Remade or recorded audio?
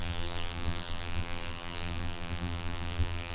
remade